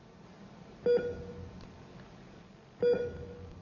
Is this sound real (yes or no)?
yes